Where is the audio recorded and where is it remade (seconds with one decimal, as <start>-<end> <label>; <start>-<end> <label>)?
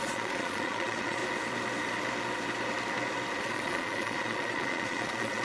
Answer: 0.0-1.2 remade; 1.2-3.4 recorded; 3.4-5.4 remade